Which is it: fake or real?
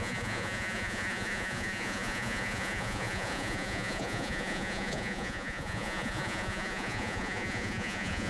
fake